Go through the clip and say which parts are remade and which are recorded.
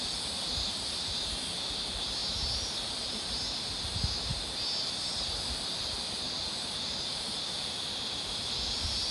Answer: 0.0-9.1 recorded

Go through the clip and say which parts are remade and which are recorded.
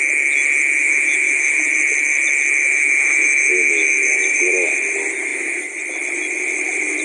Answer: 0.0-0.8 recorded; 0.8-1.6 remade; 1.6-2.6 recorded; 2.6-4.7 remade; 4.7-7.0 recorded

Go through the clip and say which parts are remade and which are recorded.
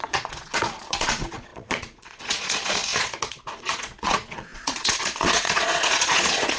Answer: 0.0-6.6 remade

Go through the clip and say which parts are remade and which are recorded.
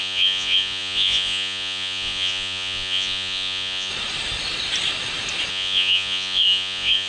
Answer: 0.0-3.9 remade; 3.9-5.5 recorded; 5.5-7.1 remade